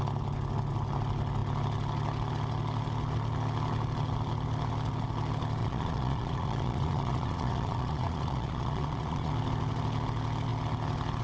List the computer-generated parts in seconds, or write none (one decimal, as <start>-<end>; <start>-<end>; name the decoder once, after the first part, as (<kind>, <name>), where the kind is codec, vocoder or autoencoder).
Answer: 5.6-9.3 (vocoder, Vocos)